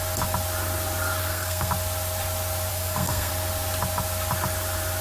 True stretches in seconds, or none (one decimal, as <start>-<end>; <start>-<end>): 0.0-1.2; 1.7-2.7; 3.3-5.0